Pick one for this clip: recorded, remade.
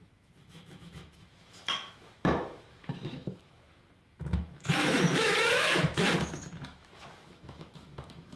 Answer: remade